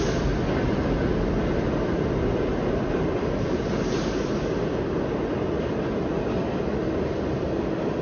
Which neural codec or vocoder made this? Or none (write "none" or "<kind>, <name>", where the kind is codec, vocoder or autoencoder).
none